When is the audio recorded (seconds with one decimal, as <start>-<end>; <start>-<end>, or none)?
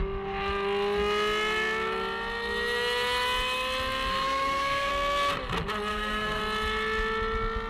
0.0-4.1; 4.9-5.9; 6.4-7.7